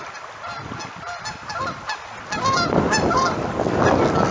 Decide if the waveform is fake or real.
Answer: real